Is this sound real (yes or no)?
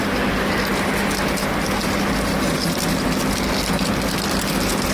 yes